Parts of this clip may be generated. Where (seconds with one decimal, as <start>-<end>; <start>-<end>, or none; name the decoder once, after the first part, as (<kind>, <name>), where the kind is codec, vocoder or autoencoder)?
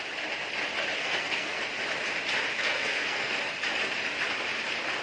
1.0-1.6 (codec, SNAC); 2.5-3.4